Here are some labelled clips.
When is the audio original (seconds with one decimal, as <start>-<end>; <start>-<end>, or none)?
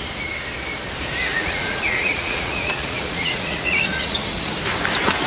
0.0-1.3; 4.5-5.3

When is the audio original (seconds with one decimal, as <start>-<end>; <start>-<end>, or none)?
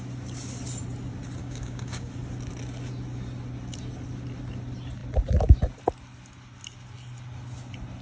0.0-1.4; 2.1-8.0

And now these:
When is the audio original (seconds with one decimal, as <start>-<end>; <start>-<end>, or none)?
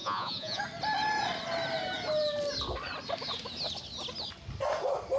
0.6-5.2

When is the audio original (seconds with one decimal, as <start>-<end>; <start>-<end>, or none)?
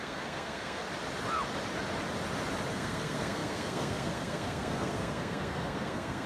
0.8-2.7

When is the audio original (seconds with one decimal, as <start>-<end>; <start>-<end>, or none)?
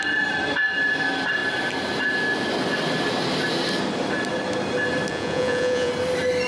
0.0-5.1; 5.9-6.5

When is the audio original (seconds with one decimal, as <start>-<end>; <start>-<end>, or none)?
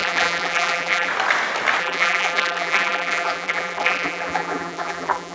1.1-1.8